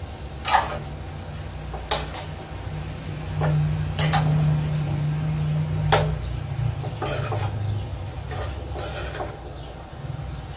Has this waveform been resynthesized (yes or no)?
no